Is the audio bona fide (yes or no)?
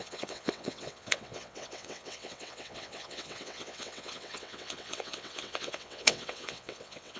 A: no